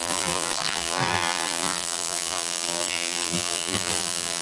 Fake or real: fake